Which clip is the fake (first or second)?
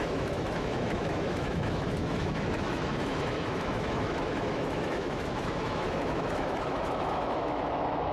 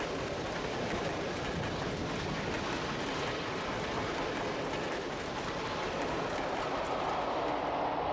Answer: first